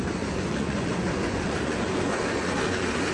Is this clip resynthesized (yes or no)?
yes